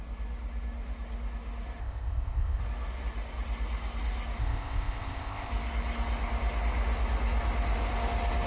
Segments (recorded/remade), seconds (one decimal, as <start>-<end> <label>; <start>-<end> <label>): 0.0-1.8 recorded; 1.8-2.6 remade; 2.6-4.4 recorded; 4.4-5.5 remade; 5.5-8.5 recorded